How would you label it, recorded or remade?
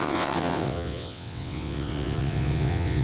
remade